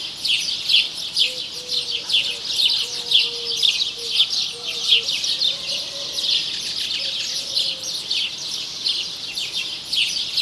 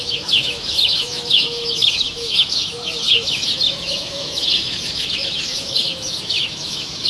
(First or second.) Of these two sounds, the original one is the first